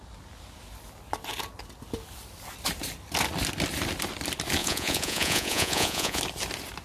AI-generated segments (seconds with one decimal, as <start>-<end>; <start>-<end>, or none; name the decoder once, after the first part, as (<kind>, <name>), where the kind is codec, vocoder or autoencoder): 4.6-6.2 (vocoder, Vocos)